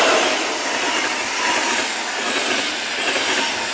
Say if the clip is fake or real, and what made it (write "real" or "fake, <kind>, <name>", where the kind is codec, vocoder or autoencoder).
real